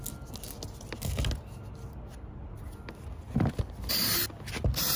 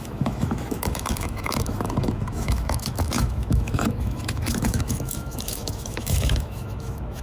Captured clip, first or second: first